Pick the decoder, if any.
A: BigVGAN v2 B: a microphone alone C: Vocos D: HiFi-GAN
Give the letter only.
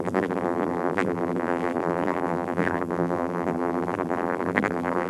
A